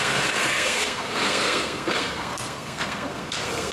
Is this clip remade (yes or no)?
yes